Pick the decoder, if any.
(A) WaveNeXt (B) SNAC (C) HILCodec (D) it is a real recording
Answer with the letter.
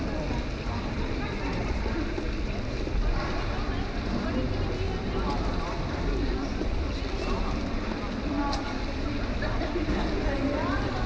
D